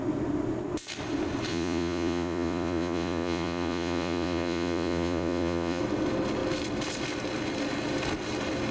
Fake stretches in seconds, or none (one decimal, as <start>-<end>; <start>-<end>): 1.5-5.8